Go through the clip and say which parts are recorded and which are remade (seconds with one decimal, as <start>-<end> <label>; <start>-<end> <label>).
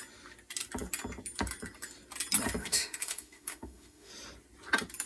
0.0-2.6 recorded; 2.6-4.1 remade; 4.1-5.1 recorded